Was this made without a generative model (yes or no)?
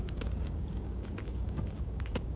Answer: no